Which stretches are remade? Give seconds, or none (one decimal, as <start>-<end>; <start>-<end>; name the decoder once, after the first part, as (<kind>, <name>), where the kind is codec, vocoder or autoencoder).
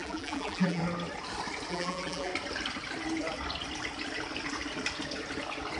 0.0-0.8 (vocoder, BigVGAN v2); 1.7-2.3